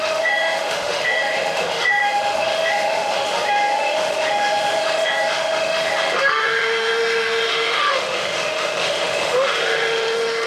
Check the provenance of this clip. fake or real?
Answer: fake